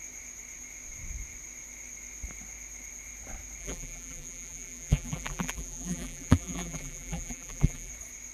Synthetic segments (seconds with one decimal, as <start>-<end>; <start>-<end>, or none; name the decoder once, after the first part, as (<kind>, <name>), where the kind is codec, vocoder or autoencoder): 3.6-7.9 (vocoder, BigVGAN v2)